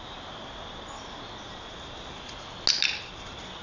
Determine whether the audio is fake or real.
real